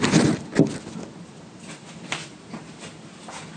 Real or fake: real